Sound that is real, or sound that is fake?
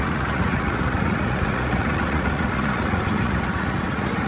fake